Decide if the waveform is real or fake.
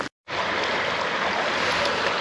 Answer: fake